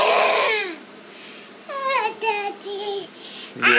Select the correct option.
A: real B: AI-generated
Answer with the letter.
A